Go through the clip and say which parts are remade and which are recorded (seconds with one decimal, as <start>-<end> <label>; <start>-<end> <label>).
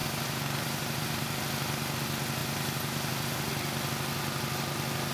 0.0-1.4 remade; 1.4-2.4 recorded; 2.4-3.5 remade; 3.5-5.1 recorded